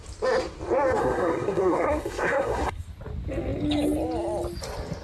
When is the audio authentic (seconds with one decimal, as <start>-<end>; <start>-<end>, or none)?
0.0-1.0; 2.8-5.0